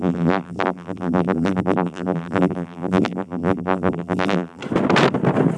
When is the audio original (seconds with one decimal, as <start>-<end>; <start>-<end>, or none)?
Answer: 4.6-5.6